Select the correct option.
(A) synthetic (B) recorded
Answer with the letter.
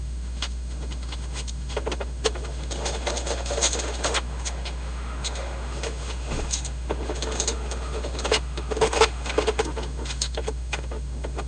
A